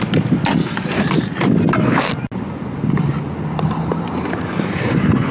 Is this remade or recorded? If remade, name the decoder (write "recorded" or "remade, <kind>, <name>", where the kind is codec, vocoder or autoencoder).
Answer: recorded